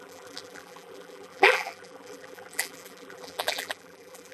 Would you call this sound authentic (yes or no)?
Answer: no